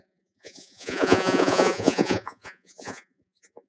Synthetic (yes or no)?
yes